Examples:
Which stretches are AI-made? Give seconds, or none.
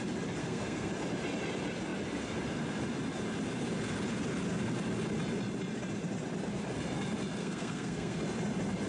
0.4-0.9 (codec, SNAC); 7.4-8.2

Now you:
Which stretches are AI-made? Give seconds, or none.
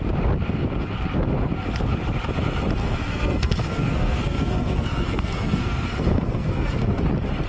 2.8-7.0 (codec, SNAC)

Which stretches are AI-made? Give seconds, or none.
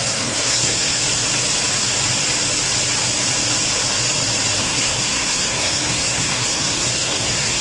0.0-1.0 (codec, SNAC); 4.6-7.6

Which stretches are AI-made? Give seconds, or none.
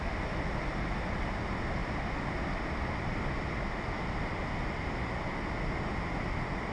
none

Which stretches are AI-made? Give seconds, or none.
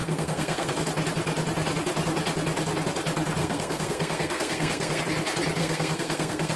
0.0-0.7 (codec, SNAC); 3.4-5.0; 5.6-6.6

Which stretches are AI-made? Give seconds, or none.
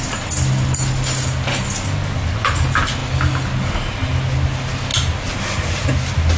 none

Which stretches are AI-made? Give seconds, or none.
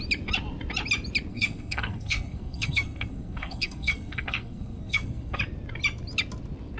1.3-5.4 (codec, SNAC)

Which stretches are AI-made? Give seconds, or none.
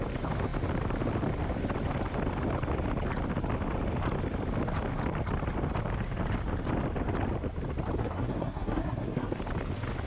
8.0-9.4 (codec, SNAC)